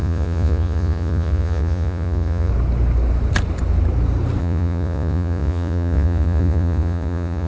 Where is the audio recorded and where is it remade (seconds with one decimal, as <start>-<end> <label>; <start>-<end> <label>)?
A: 0.0-2.5 remade; 2.5-4.4 recorded; 4.4-7.5 remade

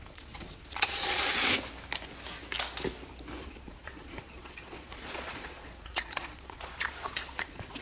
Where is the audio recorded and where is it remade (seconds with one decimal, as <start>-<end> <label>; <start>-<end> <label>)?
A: 0.0-1.5 remade; 1.5-3.4 recorded; 3.4-7.8 remade

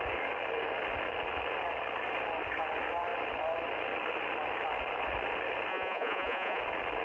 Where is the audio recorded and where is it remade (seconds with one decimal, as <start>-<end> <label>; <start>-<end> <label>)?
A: 0.0-5.7 recorded; 5.7-6.6 remade; 6.6-7.0 recorded

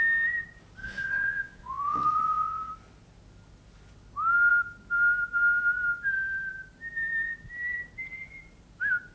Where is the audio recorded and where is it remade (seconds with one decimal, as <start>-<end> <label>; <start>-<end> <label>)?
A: 0.0-0.8 recorded; 0.8-2.7 remade; 2.7-9.1 recorded

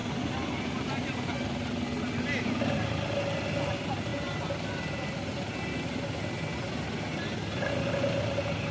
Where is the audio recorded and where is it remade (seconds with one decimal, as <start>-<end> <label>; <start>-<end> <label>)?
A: 0.0-8.7 recorded

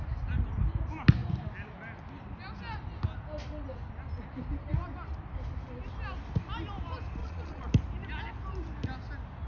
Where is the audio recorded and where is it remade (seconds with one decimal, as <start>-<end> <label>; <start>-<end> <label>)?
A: 0.0-7.2 recorded; 7.2-7.7 remade; 7.7-9.5 recorded

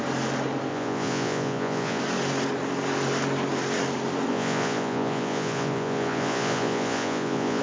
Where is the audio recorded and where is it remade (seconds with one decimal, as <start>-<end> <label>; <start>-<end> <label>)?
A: 0.0-0.7 recorded; 0.7-2.0 remade; 2.0-4.3 recorded; 4.3-7.6 remade

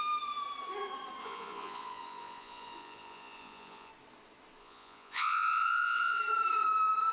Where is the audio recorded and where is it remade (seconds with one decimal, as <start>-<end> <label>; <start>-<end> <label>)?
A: 0.0-1.2 recorded; 1.2-3.9 remade; 3.9-4.6 recorded; 4.6-6.2 remade; 6.2-7.1 recorded